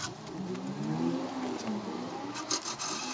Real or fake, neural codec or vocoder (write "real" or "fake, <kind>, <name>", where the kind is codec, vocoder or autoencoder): real